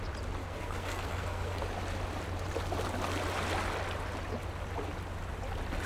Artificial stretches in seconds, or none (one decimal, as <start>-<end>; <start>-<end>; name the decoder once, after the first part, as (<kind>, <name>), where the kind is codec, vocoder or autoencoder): 0.4-1.6 (codec, SNAC)